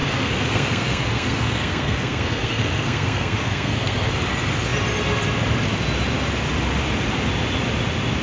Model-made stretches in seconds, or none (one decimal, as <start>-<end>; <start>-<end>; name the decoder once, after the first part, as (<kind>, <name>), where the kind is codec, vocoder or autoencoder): 0.0-4.1 (codec, SNAC)